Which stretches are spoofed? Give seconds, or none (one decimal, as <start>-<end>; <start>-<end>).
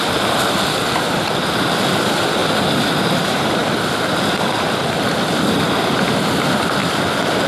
0.0-2.4; 3.0-6.8